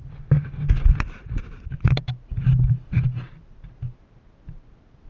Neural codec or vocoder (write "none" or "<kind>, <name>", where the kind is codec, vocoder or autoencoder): none